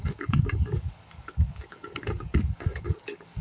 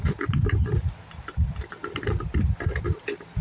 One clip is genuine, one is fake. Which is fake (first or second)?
first